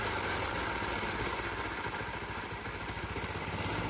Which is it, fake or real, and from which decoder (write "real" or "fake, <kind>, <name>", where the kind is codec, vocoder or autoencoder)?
real